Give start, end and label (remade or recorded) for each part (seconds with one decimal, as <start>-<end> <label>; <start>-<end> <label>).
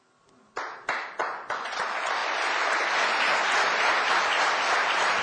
0.0-1.2 recorded; 1.2-1.8 remade; 1.8-5.2 recorded